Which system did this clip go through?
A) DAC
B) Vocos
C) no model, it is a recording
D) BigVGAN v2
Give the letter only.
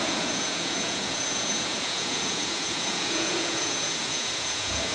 B